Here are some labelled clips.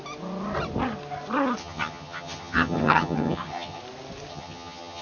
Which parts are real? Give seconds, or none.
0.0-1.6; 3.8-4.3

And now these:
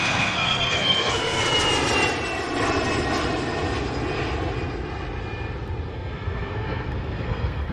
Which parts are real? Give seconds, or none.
1.4-5.9

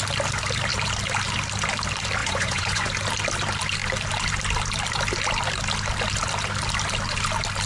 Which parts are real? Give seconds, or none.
0.0-2.2; 2.9-7.7

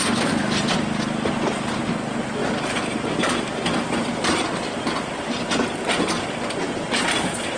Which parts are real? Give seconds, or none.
0.0-7.6

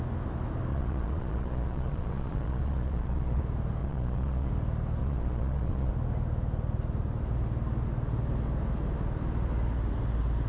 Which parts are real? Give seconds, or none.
0.0-0.7; 3.4-3.8; 4.5-5.0; 5.9-10.5

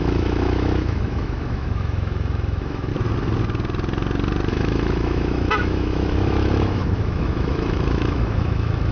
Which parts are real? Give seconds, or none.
2.9-4.5

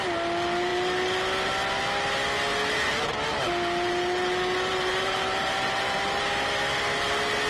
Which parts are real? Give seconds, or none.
0.0-4.7; 6.2-7.5